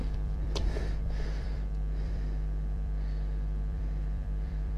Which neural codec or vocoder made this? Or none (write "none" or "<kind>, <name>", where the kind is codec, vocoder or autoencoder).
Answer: vocoder, BigVGAN v2